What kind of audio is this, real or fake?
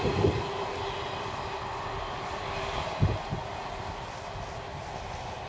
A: real